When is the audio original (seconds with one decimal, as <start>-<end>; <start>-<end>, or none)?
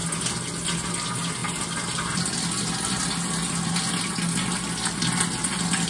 0.0-5.9